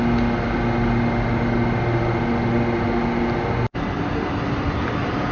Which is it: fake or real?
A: real